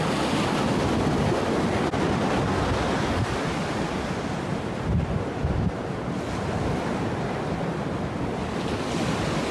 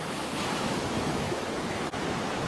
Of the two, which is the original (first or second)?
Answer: first